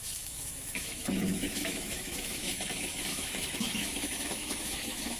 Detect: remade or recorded remade